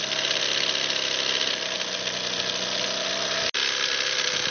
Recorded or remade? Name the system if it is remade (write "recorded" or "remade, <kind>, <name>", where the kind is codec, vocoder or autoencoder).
recorded